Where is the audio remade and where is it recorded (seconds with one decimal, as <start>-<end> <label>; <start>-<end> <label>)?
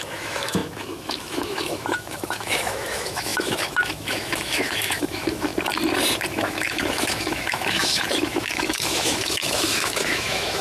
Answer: 0.0-5.5 remade; 5.5-6.3 recorded; 6.3-10.6 remade